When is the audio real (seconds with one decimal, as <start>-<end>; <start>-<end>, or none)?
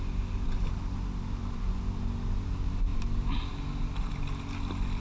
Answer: 0.0-5.0